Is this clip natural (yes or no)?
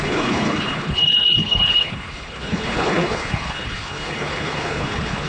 no